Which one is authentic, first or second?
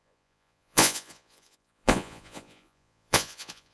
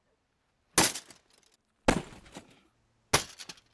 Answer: second